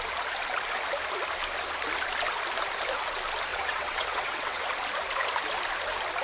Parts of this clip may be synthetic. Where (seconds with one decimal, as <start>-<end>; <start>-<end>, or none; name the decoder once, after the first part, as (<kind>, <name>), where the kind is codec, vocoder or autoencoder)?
3.5-4.6 (vocoder, WaveNeXt)